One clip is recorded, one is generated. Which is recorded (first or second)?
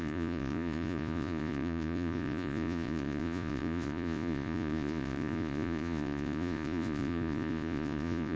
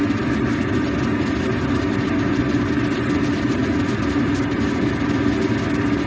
second